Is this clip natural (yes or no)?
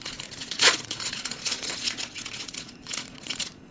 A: no